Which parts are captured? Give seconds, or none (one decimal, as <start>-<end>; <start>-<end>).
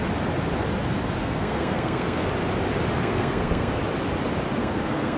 0.0-1.2; 2.3-3.0; 3.8-4.6